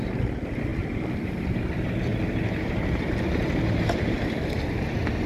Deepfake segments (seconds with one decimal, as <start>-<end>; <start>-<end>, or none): 0.7-1.6; 2.1-4.6